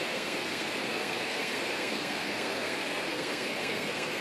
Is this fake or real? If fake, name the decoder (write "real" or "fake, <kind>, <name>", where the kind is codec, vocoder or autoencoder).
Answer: fake, codec, SNAC